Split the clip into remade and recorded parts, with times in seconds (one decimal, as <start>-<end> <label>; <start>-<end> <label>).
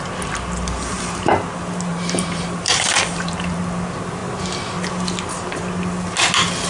0.0-1.9 recorded; 1.9-3.6 remade; 3.6-6.7 recorded